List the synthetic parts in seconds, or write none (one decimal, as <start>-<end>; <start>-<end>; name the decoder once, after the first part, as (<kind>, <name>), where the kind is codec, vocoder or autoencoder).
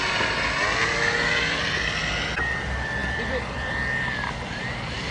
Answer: 3.0-3.7 (vocoder, BigVGAN v2)